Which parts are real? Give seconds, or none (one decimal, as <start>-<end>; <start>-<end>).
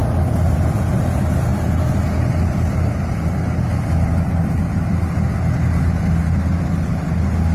0.0-7.5